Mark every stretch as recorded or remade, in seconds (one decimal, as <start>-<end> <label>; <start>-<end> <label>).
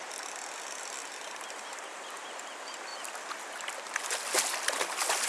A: 0.0-5.3 recorded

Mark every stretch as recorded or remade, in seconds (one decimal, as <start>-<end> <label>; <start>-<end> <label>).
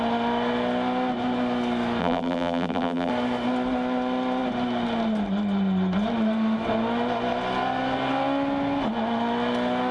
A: 0.0-2.0 recorded; 2.0-3.1 remade; 3.1-9.9 recorded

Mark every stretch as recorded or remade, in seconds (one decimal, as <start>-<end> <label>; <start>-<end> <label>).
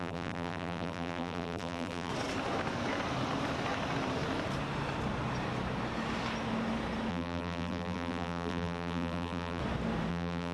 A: 0.0-2.1 remade; 2.1-7.1 recorded; 7.1-9.6 remade; 9.6-10.1 recorded; 10.1-10.5 remade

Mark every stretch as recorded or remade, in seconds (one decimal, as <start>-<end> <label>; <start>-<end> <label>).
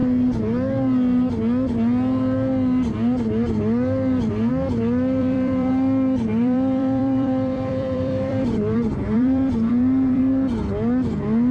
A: 0.0-5.2 recorded; 5.2-5.7 remade; 5.7-6.3 recorded; 6.3-10.2 remade; 10.2-11.5 recorded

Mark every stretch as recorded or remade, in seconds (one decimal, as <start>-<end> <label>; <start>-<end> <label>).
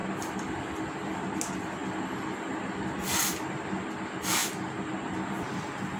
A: 0.0-1.2 remade; 1.2-1.8 recorded; 1.8-3.7 remade; 3.7-4.4 recorded; 4.4-4.9 remade; 4.9-6.0 recorded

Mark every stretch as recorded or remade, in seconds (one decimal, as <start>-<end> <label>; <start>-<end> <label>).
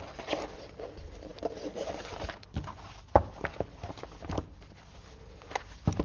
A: 0.0-6.0 recorded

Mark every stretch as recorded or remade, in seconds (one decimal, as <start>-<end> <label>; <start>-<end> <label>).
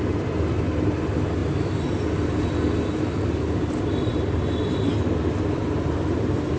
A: 0.0-5.6 recorded; 5.6-6.6 remade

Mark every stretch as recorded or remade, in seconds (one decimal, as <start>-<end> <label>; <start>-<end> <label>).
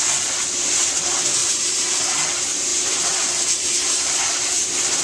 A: 0.0-1.4 recorded; 1.4-2.0 remade; 2.0-2.7 recorded; 2.7-5.0 remade